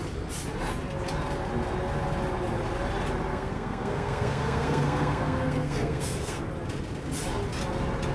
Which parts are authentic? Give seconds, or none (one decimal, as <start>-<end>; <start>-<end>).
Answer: 0.0-3.3; 6.4-8.1